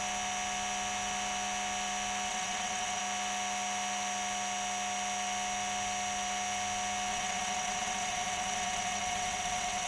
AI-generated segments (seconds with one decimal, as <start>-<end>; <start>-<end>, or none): 2.3-3.0; 7.1-9.9